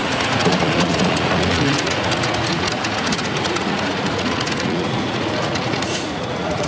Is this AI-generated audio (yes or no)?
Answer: yes